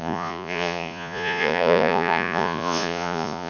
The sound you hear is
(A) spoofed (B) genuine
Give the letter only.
A